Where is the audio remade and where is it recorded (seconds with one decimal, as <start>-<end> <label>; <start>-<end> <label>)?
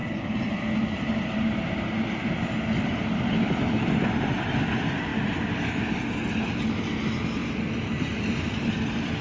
0.0-1.9 remade; 1.9-5.1 recorded; 5.1-6.4 remade; 6.4-7.4 recorded; 7.4-9.2 remade